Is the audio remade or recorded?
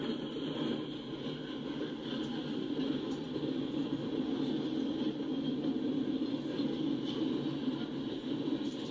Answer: recorded